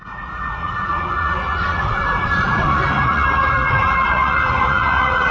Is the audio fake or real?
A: fake